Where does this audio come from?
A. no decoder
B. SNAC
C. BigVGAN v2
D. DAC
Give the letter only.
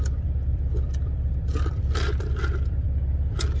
C